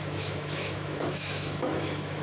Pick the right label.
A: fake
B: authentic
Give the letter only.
A